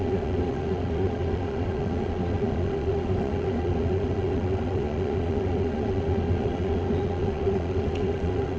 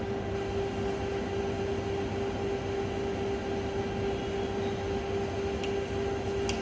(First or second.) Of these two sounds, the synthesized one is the first